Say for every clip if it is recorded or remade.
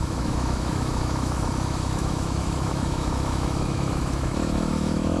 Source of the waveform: remade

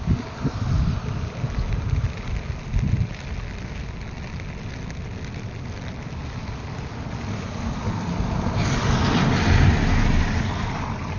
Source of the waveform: recorded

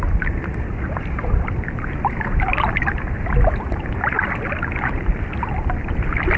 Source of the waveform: recorded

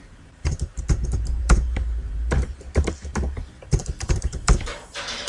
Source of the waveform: remade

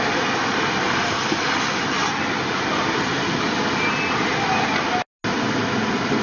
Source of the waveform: recorded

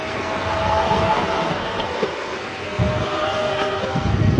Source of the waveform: remade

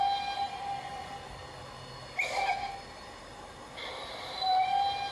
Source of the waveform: recorded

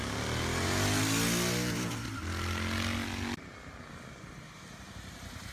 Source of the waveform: recorded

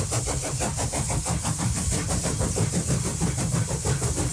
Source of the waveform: remade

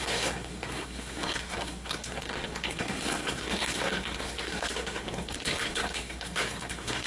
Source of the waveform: remade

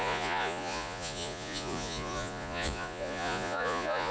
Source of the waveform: remade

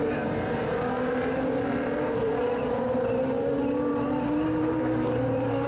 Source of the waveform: remade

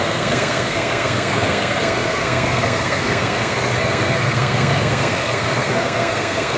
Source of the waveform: remade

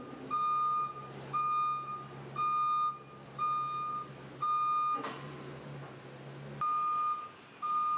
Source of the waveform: recorded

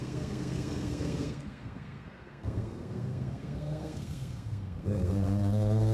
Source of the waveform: remade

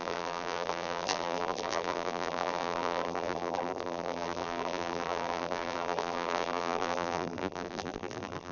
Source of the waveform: remade